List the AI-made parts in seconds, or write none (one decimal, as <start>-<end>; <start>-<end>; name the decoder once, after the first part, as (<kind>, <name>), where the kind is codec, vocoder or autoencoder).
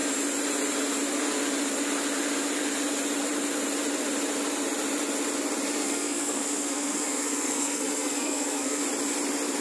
5.8-8.8 (codec, SNAC)